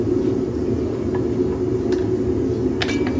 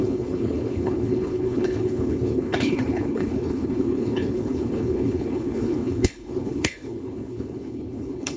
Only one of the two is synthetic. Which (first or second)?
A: second